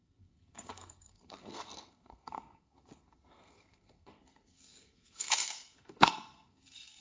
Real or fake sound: fake